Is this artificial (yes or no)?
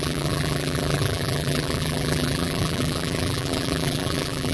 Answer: yes